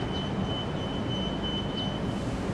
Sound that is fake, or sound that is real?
real